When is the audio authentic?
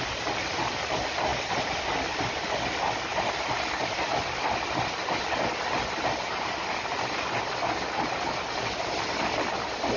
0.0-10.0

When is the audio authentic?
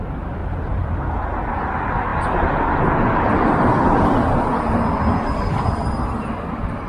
0.0-0.4; 1.0-6.9